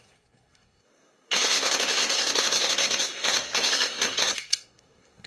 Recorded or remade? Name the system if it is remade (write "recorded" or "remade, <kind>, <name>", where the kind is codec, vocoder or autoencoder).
remade, codec, SNAC